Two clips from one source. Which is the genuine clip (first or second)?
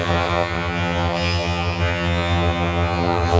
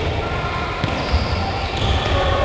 second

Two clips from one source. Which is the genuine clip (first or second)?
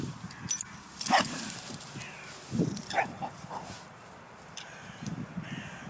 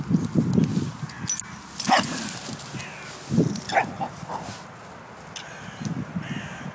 second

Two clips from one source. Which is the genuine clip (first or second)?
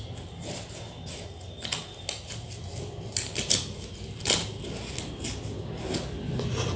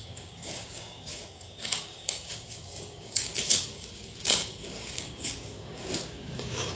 first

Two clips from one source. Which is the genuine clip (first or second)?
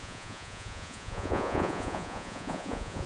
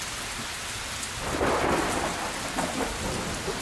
second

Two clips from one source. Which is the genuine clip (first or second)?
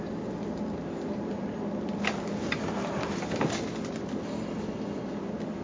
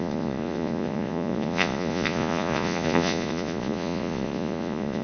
first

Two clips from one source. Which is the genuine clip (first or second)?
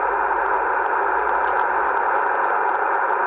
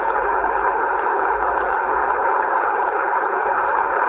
first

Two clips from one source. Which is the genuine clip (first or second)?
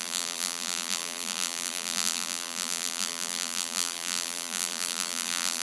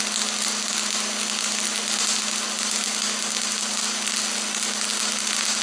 second